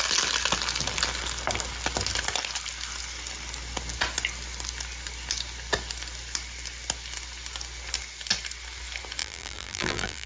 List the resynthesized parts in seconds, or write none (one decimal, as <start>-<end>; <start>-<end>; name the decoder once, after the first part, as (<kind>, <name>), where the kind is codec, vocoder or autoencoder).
9.2-10.3 (vocoder, BigVGAN v2)